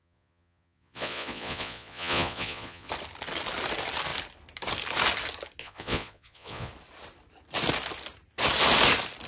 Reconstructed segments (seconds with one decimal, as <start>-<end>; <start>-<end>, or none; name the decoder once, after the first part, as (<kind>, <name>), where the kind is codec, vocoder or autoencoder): 0.0-2.9 (vocoder, Vocos); 5.6-6.7